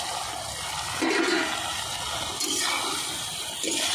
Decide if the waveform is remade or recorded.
recorded